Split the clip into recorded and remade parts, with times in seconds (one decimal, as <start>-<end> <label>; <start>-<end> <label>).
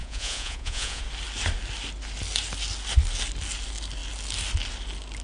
0.0-1.0 remade; 1.0-5.2 recorded